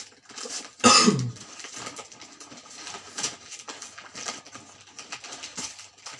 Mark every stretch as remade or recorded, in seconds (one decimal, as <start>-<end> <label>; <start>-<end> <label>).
0.0-6.2 recorded

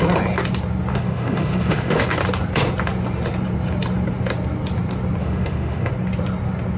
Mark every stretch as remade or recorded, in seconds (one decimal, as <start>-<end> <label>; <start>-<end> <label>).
0.0-0.9 recorded; 0.9-2.0 remade; 2.0-5.2 recorded; 5.2-5.9 remade; 5.9-6.8 recorded